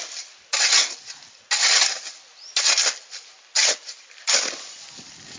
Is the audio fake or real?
real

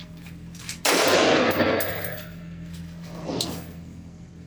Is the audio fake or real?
fake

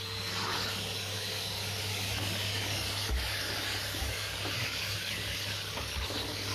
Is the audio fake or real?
fake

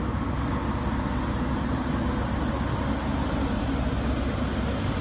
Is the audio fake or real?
real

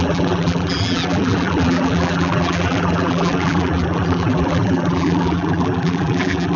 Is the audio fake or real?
fake